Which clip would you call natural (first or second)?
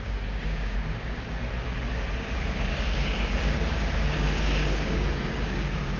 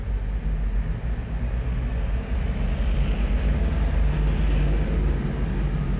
second